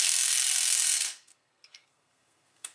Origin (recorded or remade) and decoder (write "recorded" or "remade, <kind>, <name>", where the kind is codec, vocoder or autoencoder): remade, codec, SNAC